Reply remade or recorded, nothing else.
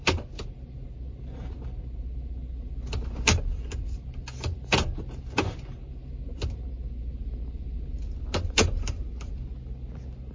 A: recorded